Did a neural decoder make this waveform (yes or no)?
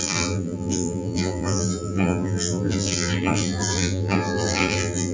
yes